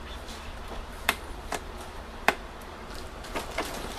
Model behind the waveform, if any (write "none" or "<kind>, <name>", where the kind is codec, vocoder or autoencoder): vocoder, BigVGAN v2